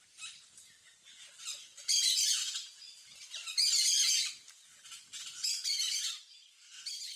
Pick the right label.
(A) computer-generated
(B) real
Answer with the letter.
B